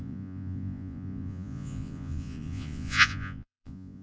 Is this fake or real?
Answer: fake